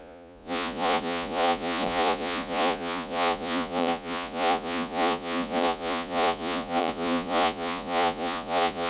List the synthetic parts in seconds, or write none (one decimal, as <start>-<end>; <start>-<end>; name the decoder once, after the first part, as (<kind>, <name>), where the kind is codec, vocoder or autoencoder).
0.0-8.9 (vocoder, Vocos)